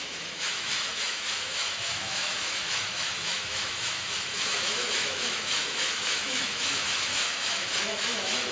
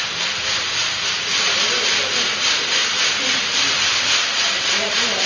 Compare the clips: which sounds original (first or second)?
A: second